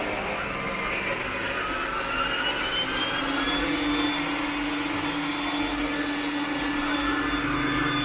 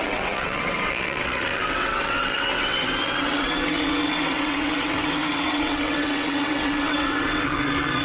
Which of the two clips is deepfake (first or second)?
second